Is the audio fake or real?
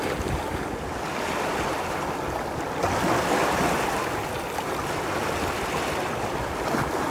real